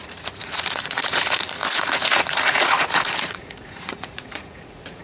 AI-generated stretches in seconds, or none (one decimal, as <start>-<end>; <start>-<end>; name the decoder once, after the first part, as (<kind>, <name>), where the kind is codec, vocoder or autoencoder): 0.0-5.0 (vocoder, Vocos)